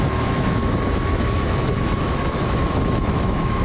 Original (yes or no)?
no